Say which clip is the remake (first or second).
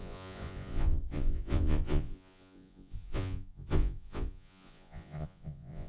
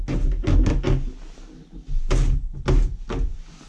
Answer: first